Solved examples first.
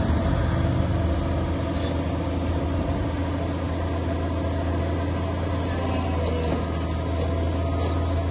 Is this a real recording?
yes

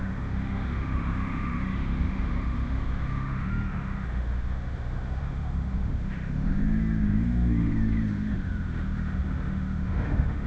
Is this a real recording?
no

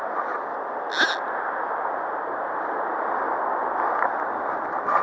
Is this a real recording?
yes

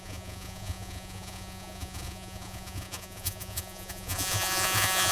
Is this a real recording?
no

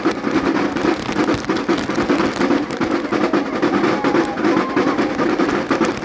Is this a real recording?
yes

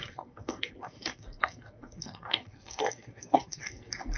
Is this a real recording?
no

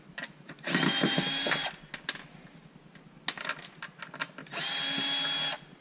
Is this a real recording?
yes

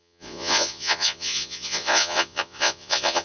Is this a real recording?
no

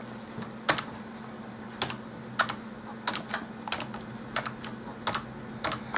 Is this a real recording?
yes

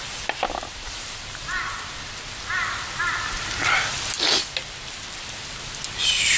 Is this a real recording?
yes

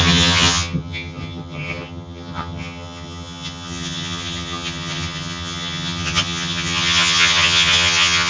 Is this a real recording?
no